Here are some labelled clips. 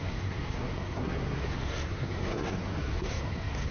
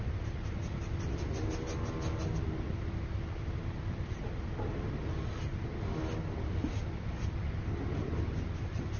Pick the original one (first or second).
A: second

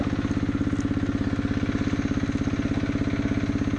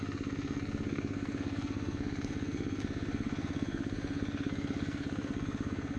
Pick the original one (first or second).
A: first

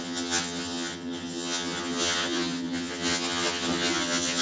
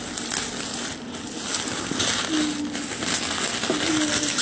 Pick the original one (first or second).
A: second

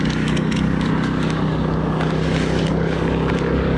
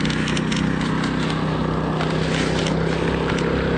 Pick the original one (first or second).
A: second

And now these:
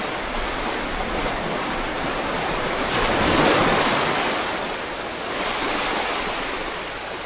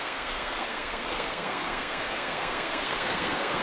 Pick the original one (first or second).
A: first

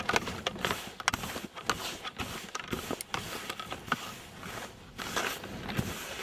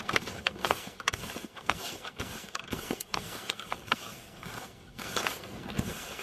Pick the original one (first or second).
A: first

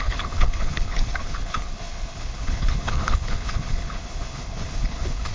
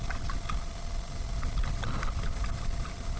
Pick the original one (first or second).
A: second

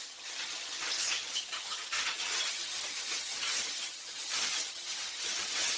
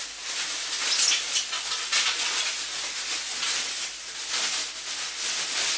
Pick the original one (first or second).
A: second